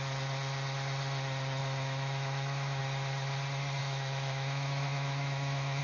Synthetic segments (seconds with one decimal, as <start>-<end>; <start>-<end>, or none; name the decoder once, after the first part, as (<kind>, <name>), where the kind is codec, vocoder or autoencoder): 1.6-2.8 (autoencoder, DAC-VAE); 3.8-5.8